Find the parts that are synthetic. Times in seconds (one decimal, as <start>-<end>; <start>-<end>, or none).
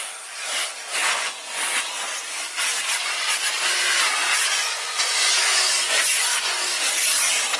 1.0-1.6; 4.2-6.5